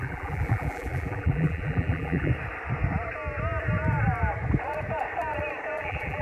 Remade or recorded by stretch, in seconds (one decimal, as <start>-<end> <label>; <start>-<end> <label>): 0.0-2.3 remade; 2.3-5.8 recorded; 5.8-6.2 remade